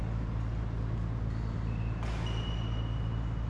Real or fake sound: real